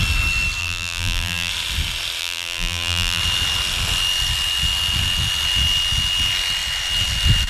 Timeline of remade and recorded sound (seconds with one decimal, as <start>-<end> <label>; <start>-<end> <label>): 0.0-0.6 recorded; 0.6-1.5 remade; 1.5-2.2 recorded; 2.2-3.2 remade; 3.2-7.5 recorded